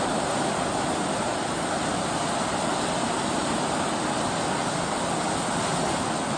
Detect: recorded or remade recorded